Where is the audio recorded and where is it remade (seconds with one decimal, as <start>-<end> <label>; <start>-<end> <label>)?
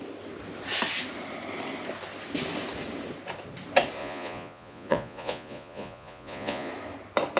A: 0.0-4.0 recorded; 4.0-6.7 remade; 6.7-7.4 recorded